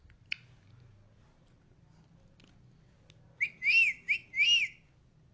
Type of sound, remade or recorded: recorded